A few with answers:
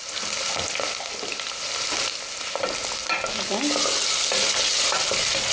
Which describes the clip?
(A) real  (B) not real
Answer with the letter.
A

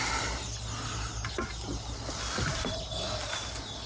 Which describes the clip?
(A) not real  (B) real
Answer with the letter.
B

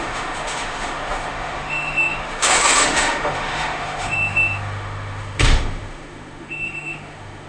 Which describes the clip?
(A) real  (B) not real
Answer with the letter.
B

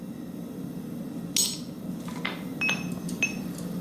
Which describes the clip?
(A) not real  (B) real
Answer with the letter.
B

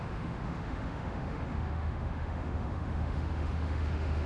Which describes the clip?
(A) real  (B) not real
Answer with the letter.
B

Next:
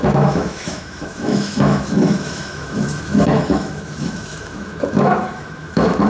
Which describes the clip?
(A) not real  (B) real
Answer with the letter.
A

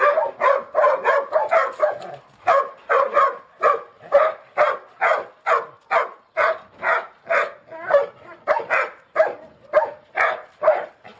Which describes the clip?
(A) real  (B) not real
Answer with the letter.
A